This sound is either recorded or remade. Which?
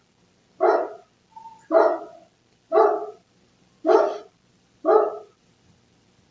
recorded